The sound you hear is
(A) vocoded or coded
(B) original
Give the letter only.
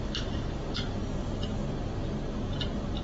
B